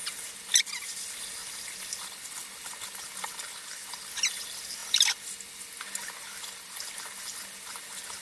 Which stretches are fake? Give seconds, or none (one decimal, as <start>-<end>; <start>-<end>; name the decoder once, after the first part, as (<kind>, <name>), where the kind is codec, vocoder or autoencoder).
none